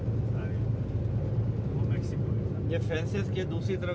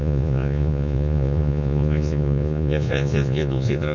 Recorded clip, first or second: first